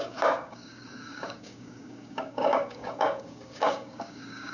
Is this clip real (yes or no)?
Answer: no